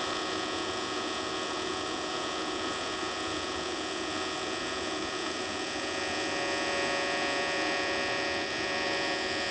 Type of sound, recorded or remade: remade